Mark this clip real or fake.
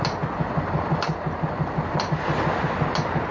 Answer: real